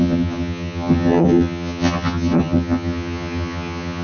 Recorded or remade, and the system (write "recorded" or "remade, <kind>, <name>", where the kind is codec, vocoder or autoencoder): remade, vocoder, HiFi-GAN